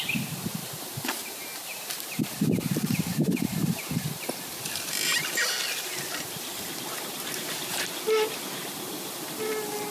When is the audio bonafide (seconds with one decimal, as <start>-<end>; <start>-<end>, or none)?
0.0-1.2; 4.3-9.9